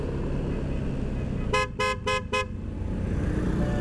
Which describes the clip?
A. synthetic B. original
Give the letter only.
B